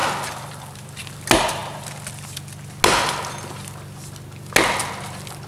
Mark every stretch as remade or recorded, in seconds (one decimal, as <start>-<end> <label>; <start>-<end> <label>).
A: 0.0-5.5 recorded